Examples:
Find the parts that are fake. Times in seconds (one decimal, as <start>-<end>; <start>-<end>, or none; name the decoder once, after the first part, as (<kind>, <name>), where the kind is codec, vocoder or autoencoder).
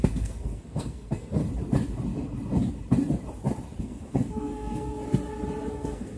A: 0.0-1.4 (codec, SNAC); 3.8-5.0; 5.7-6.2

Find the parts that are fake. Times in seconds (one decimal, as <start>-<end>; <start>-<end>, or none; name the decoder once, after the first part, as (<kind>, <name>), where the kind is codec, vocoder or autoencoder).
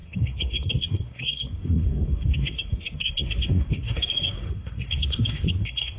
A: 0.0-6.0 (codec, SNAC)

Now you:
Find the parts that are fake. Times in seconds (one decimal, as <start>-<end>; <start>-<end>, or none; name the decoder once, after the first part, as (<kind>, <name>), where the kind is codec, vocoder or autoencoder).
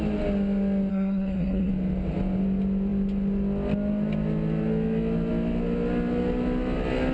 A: 0.9-1.7 (codec, SNAC)